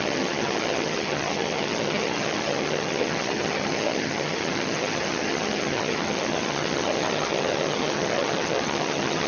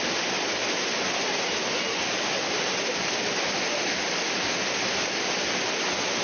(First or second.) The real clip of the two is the second